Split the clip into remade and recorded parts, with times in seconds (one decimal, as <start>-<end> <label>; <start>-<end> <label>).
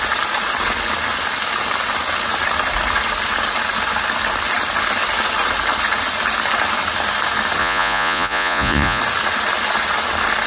0.0-7.6 recorded; 7.6-9.0 remade; 9.0-10.5 recorded